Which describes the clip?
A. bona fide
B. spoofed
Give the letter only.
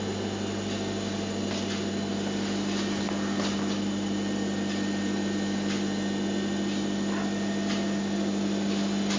A